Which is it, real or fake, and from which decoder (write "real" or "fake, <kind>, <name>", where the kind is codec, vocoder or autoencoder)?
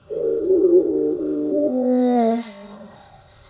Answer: fake, codec, ZipCodec